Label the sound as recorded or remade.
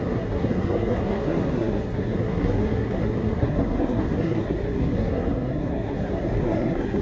remade